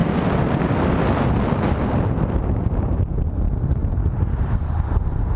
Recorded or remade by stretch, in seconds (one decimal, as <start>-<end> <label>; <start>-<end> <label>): 0.0-3.2 recorded; 3.2-5.4 remade